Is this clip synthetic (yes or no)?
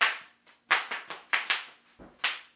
no